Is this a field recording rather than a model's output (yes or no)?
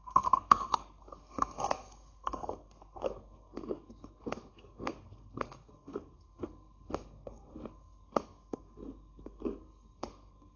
no